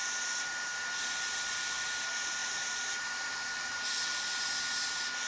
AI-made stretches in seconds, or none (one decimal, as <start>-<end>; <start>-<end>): 2.4-4.1